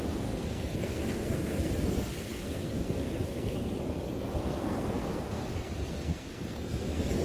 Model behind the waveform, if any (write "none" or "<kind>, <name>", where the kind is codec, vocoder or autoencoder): codec, SNAC